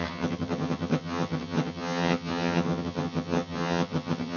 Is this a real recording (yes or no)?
no